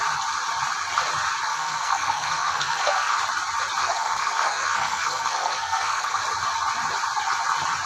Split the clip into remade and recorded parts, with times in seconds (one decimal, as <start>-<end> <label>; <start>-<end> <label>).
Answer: 0.0-1.5 recorded; 1.5-3.2 remade; 3.2-3.8 recorded; 3.8-6.2 remade; 6.2-7.9 recorded